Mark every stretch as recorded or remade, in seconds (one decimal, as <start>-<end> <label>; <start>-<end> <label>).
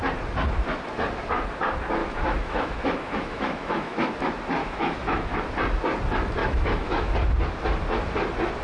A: 0.0-2.0 recorded; 2.0-4.1 remade; 4.1-4.6 recorded; 4.6-5.4 remade; 5.4-6.4 recorded; 6.4-7.1 remade; 7.1-8.6 recorded